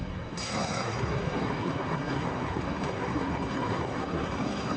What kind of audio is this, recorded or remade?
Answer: remade